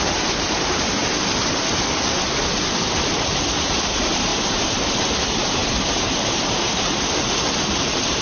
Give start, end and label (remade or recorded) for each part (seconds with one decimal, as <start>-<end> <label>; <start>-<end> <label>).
0.0-1.0 remade; 1.0-2.7 recorded; 2.7-8.2 remade